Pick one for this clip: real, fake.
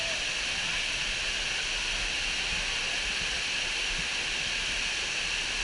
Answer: real